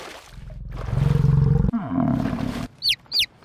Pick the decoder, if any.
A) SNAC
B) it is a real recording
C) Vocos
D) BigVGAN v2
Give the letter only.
D